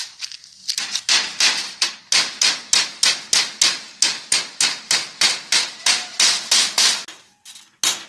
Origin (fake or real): real